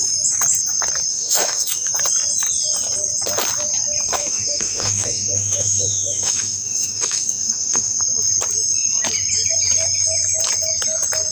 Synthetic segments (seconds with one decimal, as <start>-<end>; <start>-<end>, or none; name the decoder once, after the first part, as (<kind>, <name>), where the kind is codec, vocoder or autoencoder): 1.1-1.9 (autoencoder, DAC-VAE); 4.2-8.0